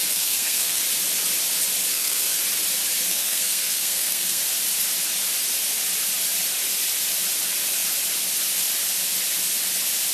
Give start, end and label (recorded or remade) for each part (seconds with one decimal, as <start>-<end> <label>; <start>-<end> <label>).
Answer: 0.0-0.8 remade; 0.8-1.9 recorded; 1.9-2.4 remade; 2.4-3.1 recorded; 3.1-4.4 remade; 4.4-10.1 recorded